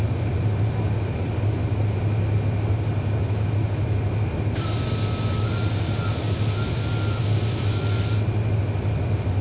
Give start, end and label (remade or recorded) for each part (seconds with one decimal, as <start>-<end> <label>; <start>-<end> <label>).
0.0-1.8 remade; 1.8-6.1 recorded; 6.1-9.4 remade